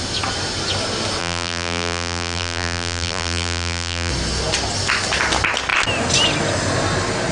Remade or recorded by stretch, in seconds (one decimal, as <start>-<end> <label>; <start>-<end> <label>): 0.0-1.2 recorded; 1.2-4.1 remade; 4.1-7.3 recorded